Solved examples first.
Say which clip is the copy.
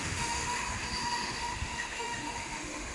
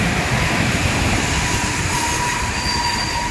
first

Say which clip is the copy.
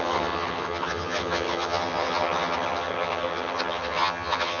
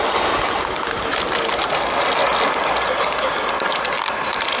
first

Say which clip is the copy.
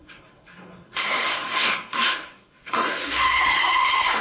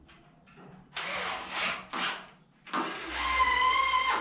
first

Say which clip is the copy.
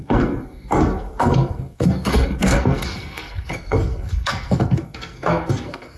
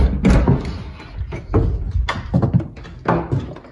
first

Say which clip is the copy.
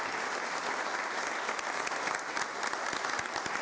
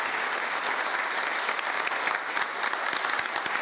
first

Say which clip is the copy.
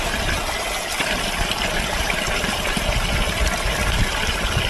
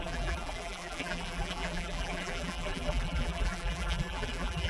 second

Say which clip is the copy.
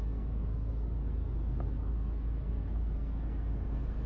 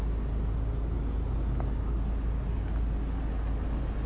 first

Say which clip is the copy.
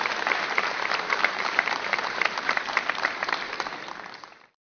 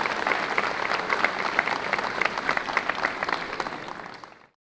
first